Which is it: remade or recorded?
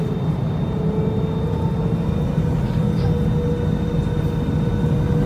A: recorded